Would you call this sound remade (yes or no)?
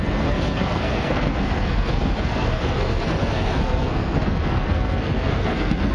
yes